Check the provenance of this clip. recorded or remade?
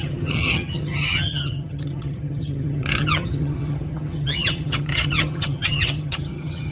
remade